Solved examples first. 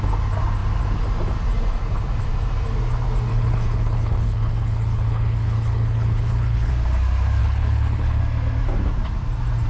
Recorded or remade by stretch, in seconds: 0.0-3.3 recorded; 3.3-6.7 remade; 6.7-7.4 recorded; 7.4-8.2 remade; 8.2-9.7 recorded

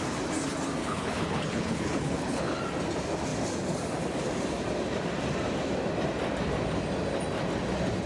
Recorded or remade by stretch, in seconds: 0.0-0.8 recorded; 0.8-2.6 remade; 2.6-8.1 recorded